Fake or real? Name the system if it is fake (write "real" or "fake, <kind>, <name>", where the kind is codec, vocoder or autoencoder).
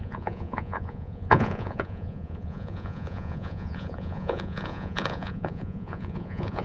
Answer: fake, vocoder, Vocos